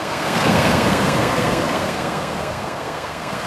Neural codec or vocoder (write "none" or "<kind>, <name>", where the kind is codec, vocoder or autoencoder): codec, SNAC